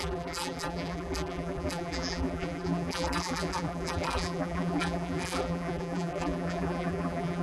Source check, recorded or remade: remade